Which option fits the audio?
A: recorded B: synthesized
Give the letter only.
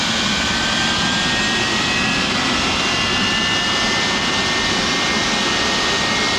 A